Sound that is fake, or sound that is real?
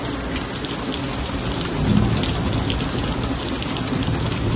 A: real